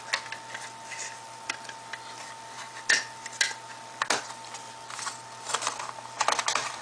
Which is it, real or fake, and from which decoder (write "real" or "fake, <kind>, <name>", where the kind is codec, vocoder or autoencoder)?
real